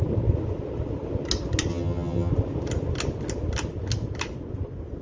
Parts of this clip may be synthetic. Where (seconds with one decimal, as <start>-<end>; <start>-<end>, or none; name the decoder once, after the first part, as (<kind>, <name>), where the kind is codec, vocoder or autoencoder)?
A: 1.7-2.3 (vocoder, HiFi-GAN)